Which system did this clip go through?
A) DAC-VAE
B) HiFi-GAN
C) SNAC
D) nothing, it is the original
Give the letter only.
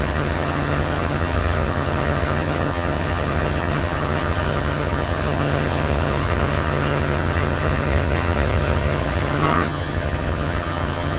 B